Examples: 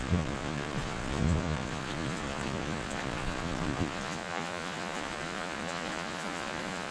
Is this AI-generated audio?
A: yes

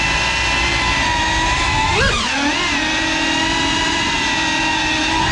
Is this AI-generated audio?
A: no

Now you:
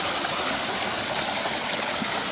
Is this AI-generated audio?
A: no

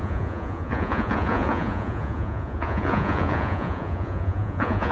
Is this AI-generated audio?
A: yes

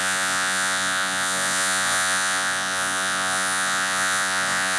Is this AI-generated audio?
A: yes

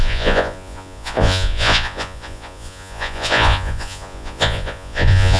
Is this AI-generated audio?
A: yes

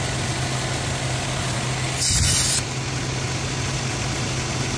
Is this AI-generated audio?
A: no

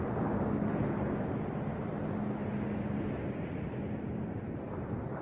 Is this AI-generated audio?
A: no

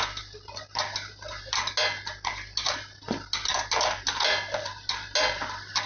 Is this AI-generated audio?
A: no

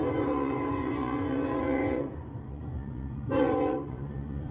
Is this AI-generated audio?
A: yes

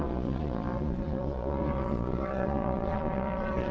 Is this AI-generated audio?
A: yes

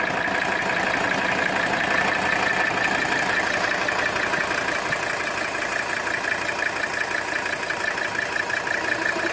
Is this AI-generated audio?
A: no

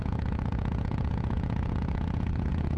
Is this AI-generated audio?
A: yes